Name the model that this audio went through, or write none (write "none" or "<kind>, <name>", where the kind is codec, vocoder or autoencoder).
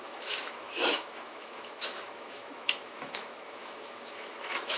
autoencoder, DAC-VAE